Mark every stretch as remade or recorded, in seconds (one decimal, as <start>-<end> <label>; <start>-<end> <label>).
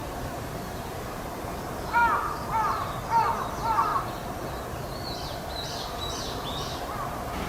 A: 0.0-2.0 remade; 2.0-3.5 recorded; 3.5-3.9 remade; 3.9-6.1 recorded; 6.1-7.5 remade